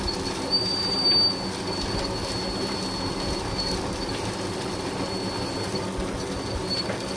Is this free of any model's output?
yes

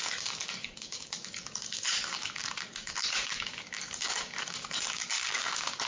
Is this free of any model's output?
no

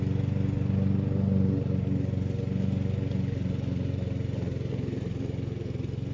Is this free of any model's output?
yes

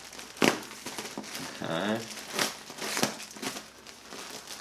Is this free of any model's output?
yes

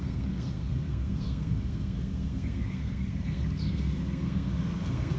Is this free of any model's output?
no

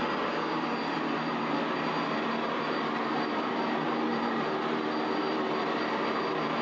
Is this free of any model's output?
no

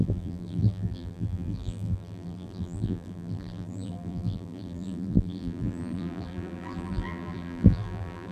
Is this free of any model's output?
no